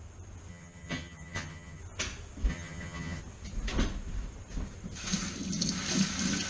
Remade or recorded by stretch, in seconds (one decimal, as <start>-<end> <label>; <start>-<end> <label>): 0.0-0.5 recorded; 0.5-1.8 remade; 1.8-2.5 recorded; 2.5-3.2 remade; 3.2-6.5 recorded